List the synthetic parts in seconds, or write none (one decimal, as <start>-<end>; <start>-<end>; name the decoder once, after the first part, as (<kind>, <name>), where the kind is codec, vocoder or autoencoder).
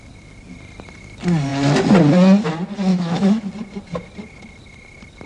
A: 2.9-3.5 (autoencoder, DAC-VAE)